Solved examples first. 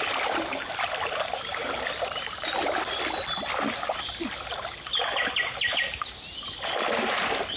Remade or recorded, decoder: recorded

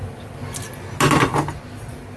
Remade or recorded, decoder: recorded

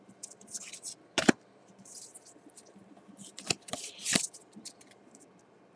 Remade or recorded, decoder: remade, vocoder, BigVGAN v2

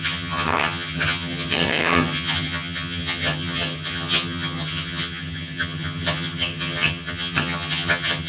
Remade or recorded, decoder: remade, vocoder, HiFi-GAN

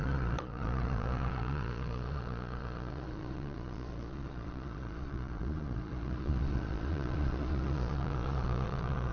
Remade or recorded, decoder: remade, vocoder, Vocos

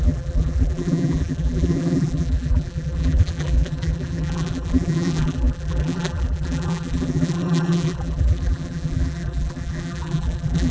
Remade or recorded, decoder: remade, vocoder, BigVGAN v2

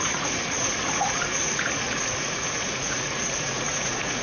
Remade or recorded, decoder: remade, vocoder, Vocos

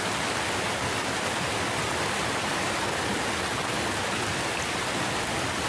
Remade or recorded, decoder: recorded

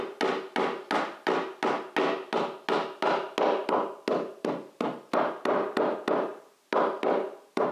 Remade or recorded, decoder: recorded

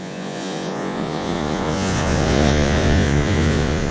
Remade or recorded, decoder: remade, vocoder, Vocos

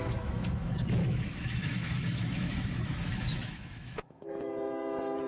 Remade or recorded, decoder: remade, autoencoder, DAC-VAE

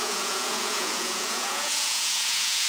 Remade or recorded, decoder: remade, vocoder, Vocos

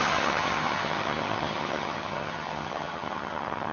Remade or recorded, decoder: remade, vocoder, HiFi-GAN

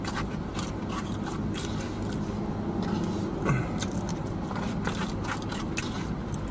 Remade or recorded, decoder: recorded